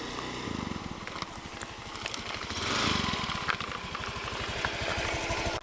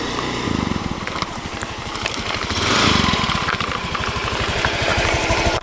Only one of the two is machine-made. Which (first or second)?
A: second